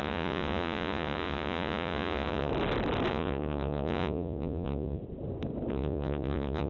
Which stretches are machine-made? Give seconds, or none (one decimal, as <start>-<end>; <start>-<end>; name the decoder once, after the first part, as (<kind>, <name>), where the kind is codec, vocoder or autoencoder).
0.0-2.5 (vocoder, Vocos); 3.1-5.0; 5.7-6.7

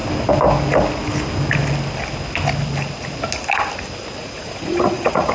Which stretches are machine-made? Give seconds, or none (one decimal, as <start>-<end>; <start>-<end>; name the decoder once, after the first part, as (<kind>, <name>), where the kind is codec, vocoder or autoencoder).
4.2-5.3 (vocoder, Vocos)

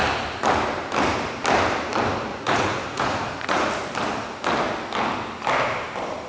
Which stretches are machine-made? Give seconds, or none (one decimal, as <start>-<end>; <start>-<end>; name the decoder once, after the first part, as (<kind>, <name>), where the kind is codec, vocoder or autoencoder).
2.3-3.7 (vocoder, Vocos)